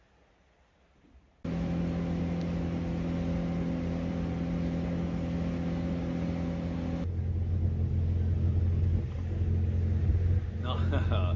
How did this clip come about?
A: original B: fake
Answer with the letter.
A